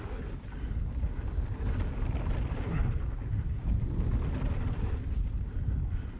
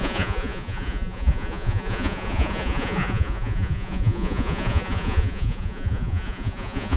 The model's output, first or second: second